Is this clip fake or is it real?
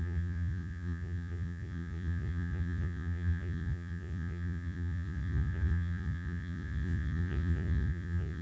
fake